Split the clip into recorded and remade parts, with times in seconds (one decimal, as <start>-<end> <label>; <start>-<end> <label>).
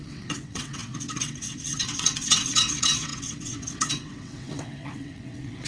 0.0-5.7 remade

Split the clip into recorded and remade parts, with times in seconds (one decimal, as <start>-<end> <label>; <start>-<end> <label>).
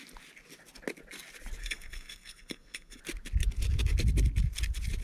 0.0-1.6 recorded; 1.6-3.0 remade; 3.0-5.0 recorded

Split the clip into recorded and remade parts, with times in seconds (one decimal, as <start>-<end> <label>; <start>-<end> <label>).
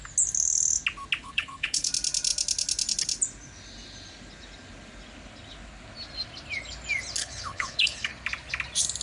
0.0-1.2 recorded; 1.2-1.9 remade; 1.9-7.2 recorded; 7.2-8.1 remade; 8.1-9.0 recorded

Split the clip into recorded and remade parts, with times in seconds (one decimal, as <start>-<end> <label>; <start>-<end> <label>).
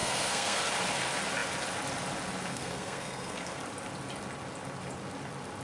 0.0-0.6 remade; 0.6-2.5 recorded; 2.5-3.6 remade; 3.6-5.6 recorded